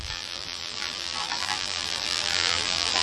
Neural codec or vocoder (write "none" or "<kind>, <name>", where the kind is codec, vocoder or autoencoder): vocoder, BigVGAN v2